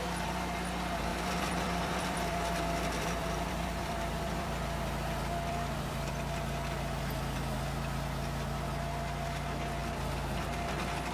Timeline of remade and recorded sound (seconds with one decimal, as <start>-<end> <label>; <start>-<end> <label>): 0.0-1.1 recorded; 1.1-6.1 remade; 6.1-9.8 recorded; 9.8-10.7 remade; 10.7-11.1 recorded